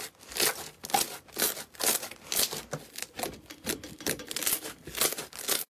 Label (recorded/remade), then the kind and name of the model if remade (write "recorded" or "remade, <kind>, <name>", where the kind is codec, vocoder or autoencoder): recorded